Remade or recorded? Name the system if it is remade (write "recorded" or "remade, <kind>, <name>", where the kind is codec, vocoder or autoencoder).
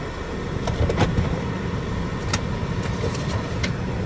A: recorded